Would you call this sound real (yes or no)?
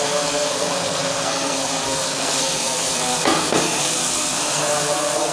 no